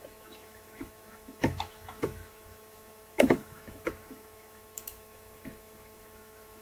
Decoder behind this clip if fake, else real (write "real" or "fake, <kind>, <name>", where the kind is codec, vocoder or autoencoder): fake, autoencoder, DAC-VAE